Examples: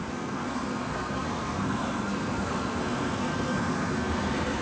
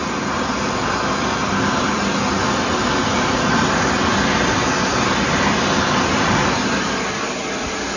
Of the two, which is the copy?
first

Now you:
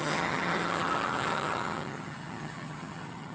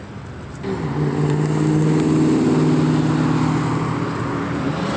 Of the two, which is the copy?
first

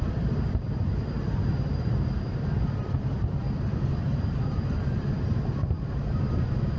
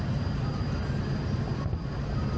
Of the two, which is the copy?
first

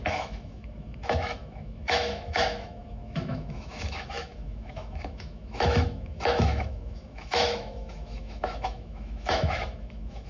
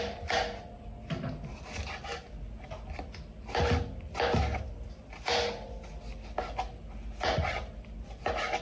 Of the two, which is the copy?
first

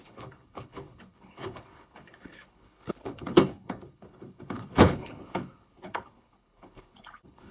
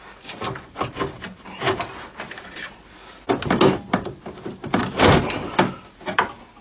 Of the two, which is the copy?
first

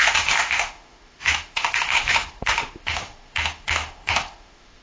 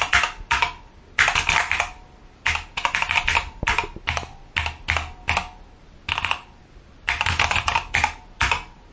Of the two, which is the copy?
first